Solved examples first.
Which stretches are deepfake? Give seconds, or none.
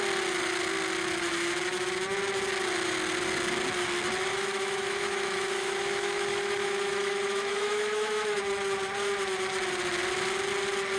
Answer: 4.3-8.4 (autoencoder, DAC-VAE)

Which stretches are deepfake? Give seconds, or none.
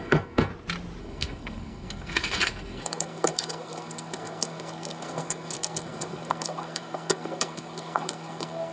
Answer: 0.0-0.5 (codec, SNAC); 1.0-8.7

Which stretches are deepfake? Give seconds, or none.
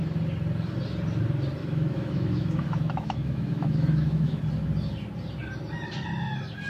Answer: 1.6-4.4 (autoencoder, DAC-VAE)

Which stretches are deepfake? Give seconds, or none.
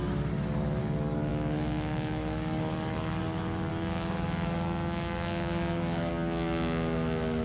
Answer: 1.3-3.2 (codec, DAC); 3.7-6.1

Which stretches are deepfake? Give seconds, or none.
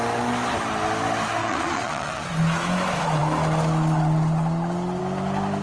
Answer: 1.4-2.3 (vocoder, Vocos)